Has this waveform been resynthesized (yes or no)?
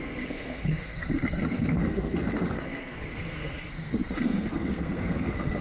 yes